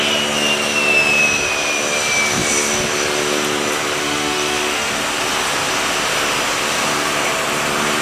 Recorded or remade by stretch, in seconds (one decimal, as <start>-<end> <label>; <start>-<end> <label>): 0.0-4.0 recorded; 4.0-4.9 remade; 4.9-8.0 recorded